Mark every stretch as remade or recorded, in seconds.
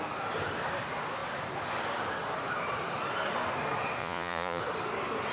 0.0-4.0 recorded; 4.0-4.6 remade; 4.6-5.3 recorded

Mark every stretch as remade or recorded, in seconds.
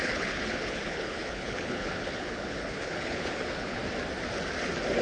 0.0-3.8 remade; 3.8-5.0 recorded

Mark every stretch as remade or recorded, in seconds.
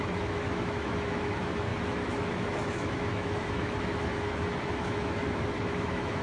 0.0-6.2 remade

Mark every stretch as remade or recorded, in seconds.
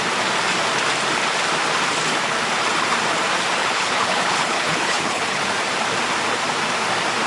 0.0-3.6 recorded; 3.6-5.4 remade; 5.4-7.3 recorded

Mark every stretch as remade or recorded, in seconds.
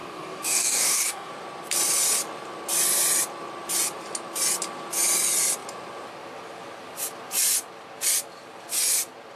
0.0-1.3 remade; 1.3-9.4 recorded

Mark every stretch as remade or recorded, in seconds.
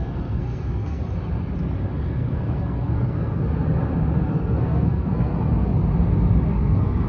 0.0-1.0 remade; 1.0-2.0 recorded; 2.0-3.4 remade; 3.4-4.4 recorded; 4.4-5.3 remade; 5.3-6.5 recorded; 6.5-7.1 remade